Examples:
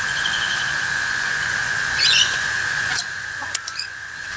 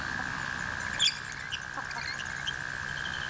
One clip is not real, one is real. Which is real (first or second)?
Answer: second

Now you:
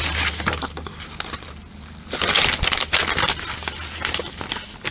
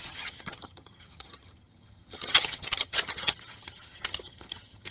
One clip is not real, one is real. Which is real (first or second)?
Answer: first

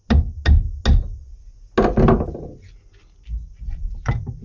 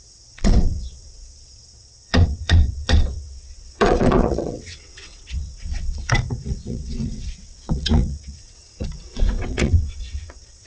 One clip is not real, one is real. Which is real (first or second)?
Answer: first